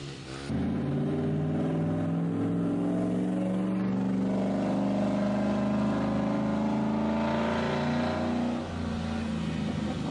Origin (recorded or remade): recorded